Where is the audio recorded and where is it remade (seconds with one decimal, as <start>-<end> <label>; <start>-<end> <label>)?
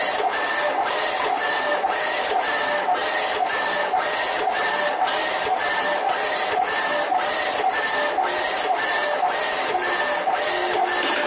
0.0-11.3 recorded